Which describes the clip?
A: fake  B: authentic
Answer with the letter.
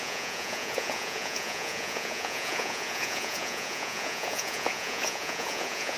A